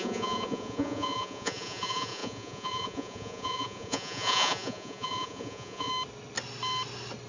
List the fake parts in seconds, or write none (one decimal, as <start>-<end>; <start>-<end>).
0.0-5.9